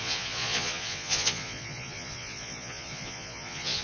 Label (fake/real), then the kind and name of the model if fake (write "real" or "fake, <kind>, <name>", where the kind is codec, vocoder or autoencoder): fake, vocoder, Vocos